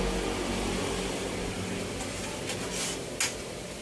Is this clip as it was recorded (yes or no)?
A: yes